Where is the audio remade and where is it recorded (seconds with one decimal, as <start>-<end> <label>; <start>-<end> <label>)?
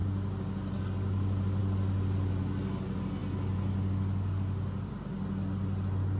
0.0-6.2 recorded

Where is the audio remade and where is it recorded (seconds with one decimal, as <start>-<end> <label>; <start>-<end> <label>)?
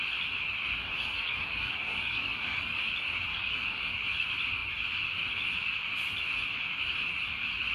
0.0-0.8 recorded; 0.8-2.9 remade; 2.9-3.3 recorded; 3.3-3.9 remade; 3.9-7.7 recorded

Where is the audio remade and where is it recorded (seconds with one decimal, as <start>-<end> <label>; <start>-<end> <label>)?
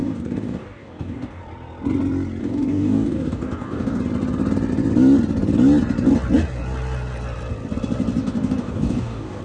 0.0-1.4 remade; 1.4-2.4 recorded; 2.4-4.0 remade; 4.0-8.2 recorded; 8.2-9.4 remade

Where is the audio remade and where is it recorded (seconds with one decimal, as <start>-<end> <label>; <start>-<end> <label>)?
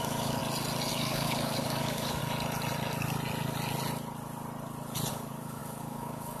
0.0-0.4 remade; 0.4-0.9 recorded; 0.9-2.2 remade; 2.2-5.1 recorded; 5.1-6.4 remade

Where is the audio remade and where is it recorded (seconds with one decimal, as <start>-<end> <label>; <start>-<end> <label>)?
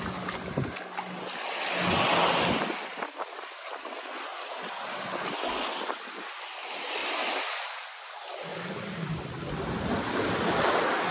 0.0-11.1 recorded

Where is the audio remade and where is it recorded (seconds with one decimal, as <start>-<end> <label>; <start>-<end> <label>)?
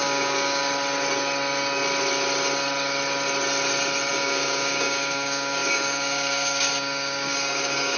0.0-0.6 remade; 0.6-4.1 recorded; 4.1-8.0 remade